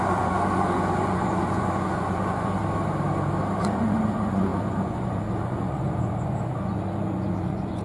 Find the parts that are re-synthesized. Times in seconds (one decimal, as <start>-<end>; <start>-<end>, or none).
0.0-2.6; 3.6-7.8